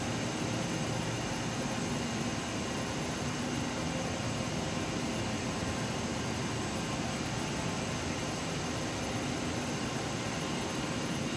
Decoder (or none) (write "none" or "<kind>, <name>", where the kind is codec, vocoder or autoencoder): none